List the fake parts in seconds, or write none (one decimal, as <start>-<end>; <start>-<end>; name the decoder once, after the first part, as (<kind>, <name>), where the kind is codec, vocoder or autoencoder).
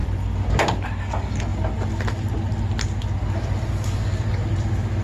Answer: none